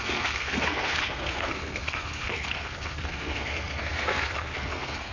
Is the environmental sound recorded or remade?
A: remade